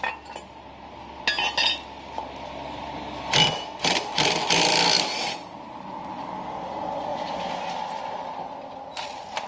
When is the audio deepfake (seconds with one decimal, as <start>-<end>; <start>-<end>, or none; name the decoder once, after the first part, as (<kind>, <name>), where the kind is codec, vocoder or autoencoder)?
none